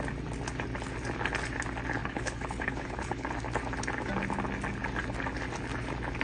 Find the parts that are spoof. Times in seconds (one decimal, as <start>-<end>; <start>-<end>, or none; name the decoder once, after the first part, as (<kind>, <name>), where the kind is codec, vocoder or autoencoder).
2.0-3.3 (codec, HILCodec)